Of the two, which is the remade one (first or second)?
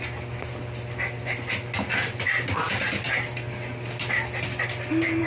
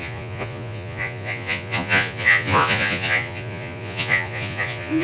second